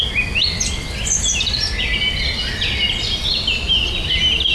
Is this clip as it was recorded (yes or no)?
yes